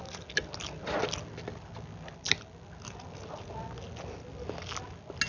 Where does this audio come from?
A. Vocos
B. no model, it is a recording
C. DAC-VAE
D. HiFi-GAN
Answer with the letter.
B